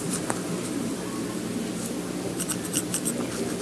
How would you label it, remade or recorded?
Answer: recorded